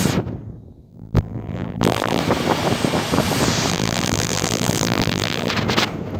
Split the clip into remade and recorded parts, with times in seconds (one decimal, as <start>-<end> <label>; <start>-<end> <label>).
0.0-0.9 recorded; 0.9-2.2 remade; 2.2-3.7 recorded; 3.7-5.5 remade; 5.5-6.2 recorded